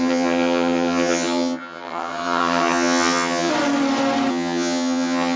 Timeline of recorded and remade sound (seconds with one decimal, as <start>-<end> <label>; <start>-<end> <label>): 0.0-3.5 remade; 3.5-4.3 recorded; 4.3-5.4 remade